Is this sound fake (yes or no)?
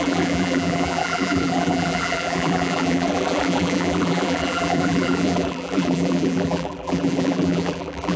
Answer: yes